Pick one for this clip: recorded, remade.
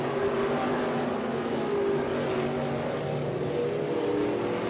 recorded